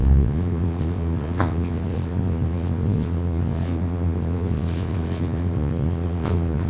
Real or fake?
fake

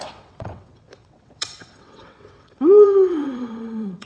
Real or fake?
fake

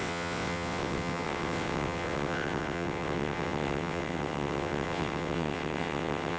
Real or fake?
fake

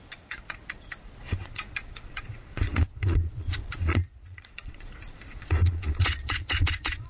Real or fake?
fake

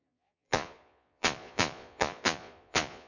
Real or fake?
fake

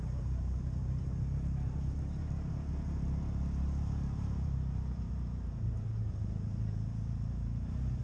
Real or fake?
fake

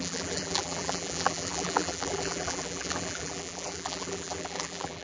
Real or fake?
fake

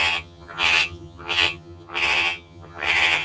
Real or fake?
fake